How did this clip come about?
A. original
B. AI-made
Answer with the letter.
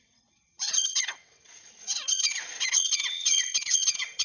B